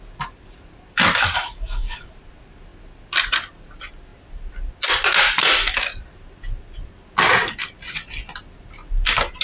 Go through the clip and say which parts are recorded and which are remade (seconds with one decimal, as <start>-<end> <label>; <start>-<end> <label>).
0.0-1.4 recorded; 1.4-2.1 remade; 2.1-9.4 recorded